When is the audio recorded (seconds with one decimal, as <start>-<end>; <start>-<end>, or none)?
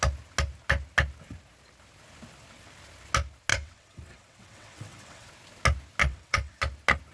0.0-3.5; 5.3-6.0; 6.6-7.1